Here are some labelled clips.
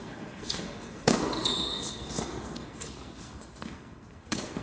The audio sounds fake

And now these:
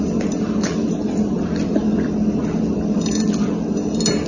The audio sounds real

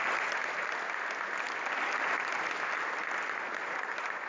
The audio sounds real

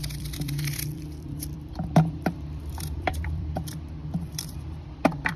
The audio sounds fake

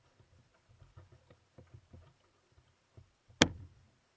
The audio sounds real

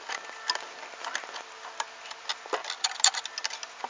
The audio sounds real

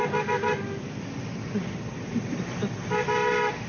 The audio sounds real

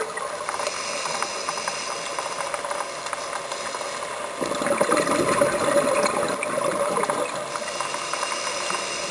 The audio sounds real